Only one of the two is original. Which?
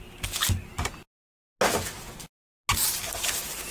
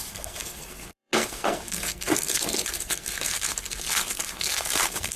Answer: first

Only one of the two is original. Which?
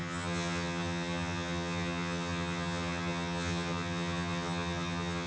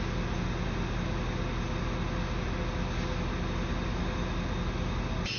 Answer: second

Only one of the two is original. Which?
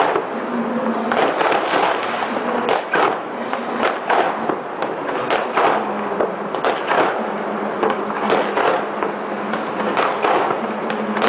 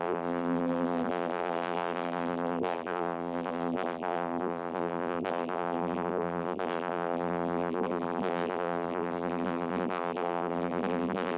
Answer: first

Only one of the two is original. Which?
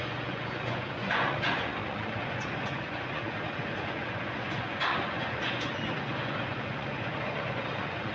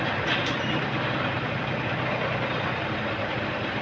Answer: second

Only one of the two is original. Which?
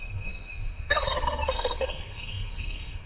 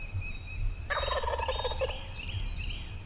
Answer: second